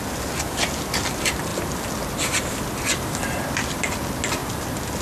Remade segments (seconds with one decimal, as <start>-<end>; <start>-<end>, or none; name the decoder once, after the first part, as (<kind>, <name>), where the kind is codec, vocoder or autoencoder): none